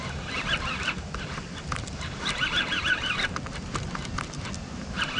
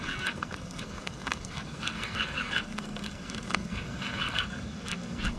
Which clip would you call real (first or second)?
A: first